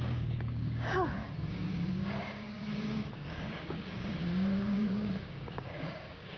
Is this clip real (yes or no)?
no